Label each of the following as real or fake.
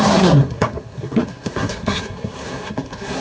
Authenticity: fake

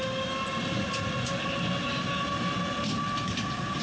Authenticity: real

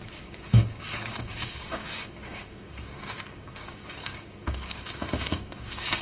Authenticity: fake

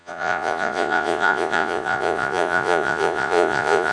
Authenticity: fake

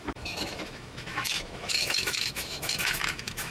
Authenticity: fake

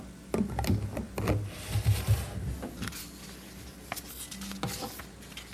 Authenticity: real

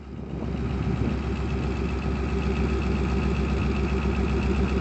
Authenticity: real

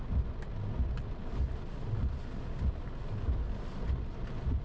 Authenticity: real